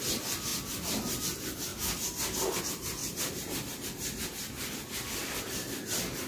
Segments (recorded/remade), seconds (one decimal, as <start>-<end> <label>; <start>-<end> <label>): 0.0-3.0 recorded; 3.0-4.7 remade; 4.7-6.3 recorded